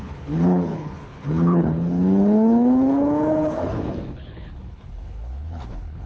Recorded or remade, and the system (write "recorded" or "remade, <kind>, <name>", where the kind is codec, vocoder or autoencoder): remade, codec, HILCodec